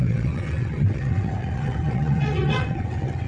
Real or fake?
fake